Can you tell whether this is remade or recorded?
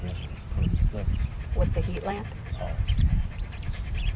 remade